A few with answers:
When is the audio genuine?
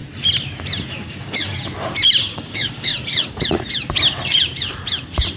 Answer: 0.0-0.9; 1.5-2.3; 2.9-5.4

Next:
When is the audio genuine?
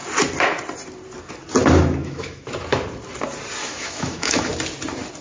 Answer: 0.0-2.0; 2.5-3.6; 4.5-5.2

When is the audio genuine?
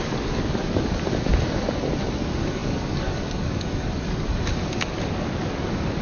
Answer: 1.3-2.2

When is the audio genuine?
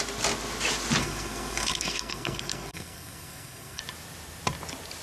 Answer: 0.0-1.0; 3.8-5.0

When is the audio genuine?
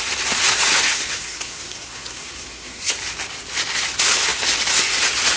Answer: 0.0-0.9; 2.9-5.4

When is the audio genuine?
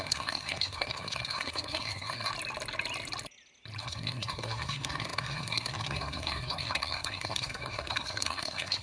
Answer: 2.3-3.8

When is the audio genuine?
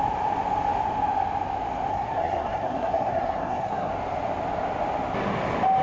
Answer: 0.0-1.9; 3.9-5.8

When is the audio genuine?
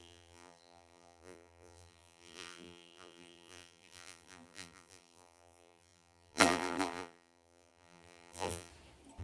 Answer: 8.7-9.2